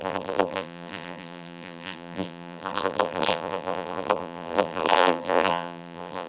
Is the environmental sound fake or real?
fake